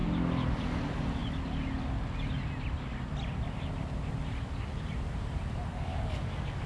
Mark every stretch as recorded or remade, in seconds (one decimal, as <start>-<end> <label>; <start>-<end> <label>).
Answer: 0.0-5.7 recorded; 5.7-6.7 remade